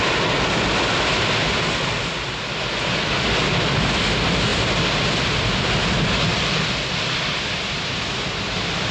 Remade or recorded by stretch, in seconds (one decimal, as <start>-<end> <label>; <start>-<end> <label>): 0.0-8.9 recorded